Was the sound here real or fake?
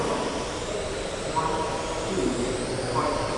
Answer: real